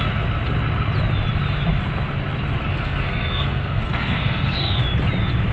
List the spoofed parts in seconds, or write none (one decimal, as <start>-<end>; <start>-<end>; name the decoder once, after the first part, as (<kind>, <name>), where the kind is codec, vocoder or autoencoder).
2.7-4.8 (codec, SNAC)